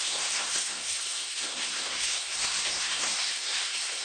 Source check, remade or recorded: remade